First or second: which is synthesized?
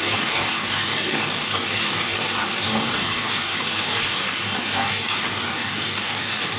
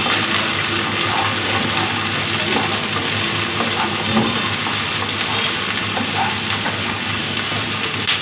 first